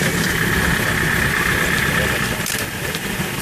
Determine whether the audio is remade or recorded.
recorded